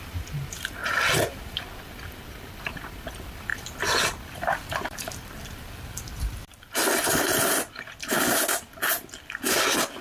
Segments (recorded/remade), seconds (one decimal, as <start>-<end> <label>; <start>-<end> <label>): 0.0-3.5 recorded; 3.5-7.7 remade; 7.7-10.0 recorded